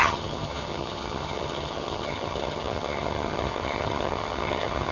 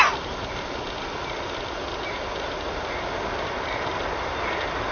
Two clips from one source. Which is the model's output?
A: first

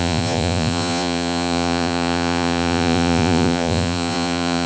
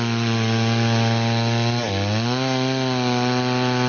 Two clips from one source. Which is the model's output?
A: first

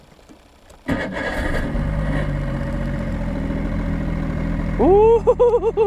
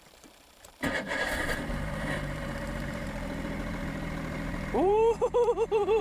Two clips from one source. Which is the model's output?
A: second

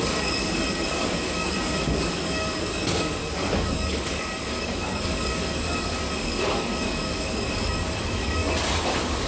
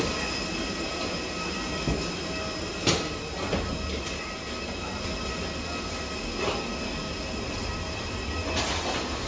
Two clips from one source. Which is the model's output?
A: first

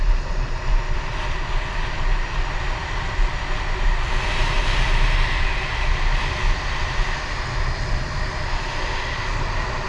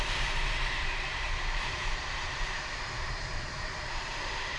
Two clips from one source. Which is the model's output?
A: second